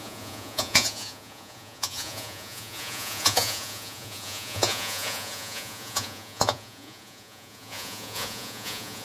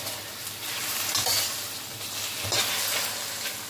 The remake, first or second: first